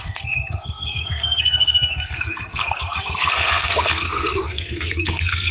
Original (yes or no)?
no